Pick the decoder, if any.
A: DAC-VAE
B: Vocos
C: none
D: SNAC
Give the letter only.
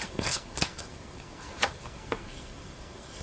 D